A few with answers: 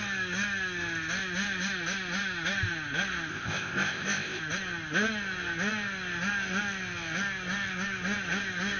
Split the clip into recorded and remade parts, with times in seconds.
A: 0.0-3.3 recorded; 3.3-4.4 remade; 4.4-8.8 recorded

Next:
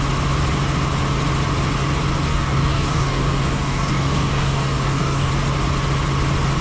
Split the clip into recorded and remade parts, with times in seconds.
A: 0.0-2.3 recorded; 2.3-5.3 remade; 5.3-6.6 recorded

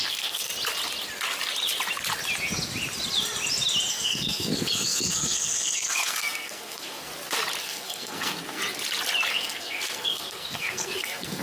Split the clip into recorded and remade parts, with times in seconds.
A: 0.0-0.5 remade; 0.5-3.9 recorded; 3.9-7.1 remade; 7.1-7.6 recorded; 7.6-8.6 remade; 8.6-9.3 recorded; 9.3-11.4 remade